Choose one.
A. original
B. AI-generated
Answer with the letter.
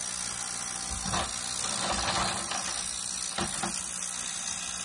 A